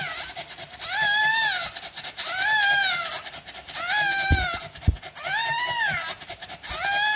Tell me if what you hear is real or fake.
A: real